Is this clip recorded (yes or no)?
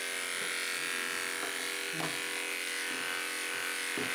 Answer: yes